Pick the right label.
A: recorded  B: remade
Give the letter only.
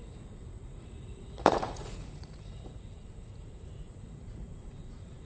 B